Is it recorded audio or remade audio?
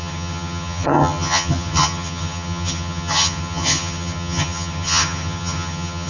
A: remade